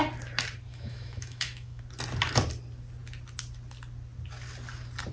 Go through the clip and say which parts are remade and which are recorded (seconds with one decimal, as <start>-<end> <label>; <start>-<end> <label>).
0.0-0.7 recorded; 0.7-1.8 remade; 1.8-5.1 recorded